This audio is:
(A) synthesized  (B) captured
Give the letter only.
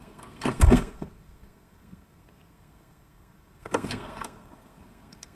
A